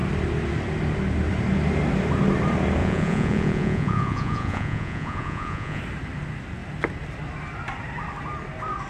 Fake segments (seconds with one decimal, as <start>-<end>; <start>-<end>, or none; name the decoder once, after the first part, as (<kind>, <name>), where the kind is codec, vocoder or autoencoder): 2.8-5.8 (vocoder, Vocos)